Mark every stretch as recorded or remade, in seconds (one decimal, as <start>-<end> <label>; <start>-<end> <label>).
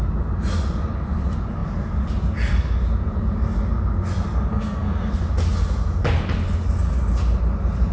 0.0-4.5 recorded; 4.5-5.1 remade; 5.1-7.9 recorded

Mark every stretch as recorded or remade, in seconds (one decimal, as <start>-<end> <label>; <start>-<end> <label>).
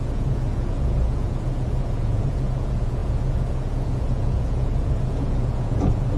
0.0-6.2 remade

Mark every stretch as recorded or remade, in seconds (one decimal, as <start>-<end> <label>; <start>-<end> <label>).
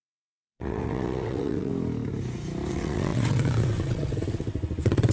0.0-1.7 remade; 1.7-2.7 recorded; 2.7-5.1 remade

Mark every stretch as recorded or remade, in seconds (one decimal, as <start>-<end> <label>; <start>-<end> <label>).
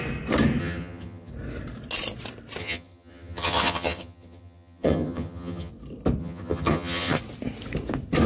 0.0-0.6 recorded; 0.6-1.3 remade; 1.3-2.6 recorded; 2.6-5.7 remade; 5.7-6.2 recorded; 6.2-7.2 remade; 7.2-8.3 recorded